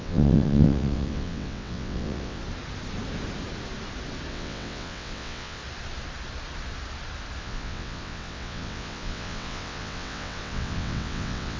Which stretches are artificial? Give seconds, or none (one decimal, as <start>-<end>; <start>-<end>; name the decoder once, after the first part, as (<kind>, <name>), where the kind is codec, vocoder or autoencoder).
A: 0.0-2.4 (vocoder, WaveNeXt); 4.3-5.6; 7.4-11.6